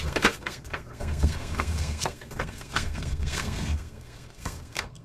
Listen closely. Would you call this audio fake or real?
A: fake